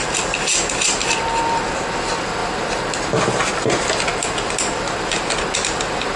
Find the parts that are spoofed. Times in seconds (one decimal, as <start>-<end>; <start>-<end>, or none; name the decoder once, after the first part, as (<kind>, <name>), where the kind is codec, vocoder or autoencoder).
none